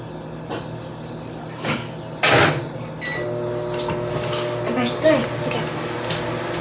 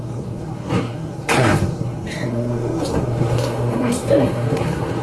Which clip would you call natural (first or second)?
first